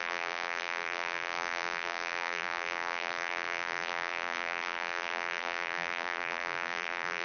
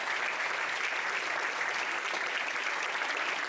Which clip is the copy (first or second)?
first